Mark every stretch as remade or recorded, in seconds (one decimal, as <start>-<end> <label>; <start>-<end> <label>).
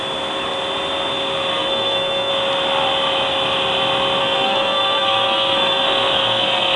0.0-1.5 recorded; 1.5-2.3 remade; 2.3-4.2 recorded; 4.2-6.8 remade